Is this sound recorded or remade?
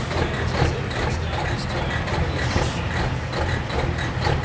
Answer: recorded